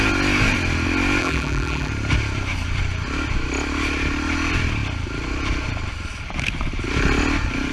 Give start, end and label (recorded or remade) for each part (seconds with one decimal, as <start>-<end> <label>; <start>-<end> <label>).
0.0-1.2 recorded; 1.2-1.9 remade; 1.9-7.7 recorded